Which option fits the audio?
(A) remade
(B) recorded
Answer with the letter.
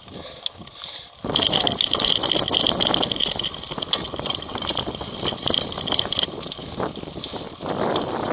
B